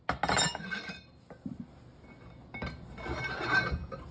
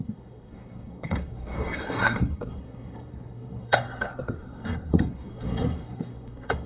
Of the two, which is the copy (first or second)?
second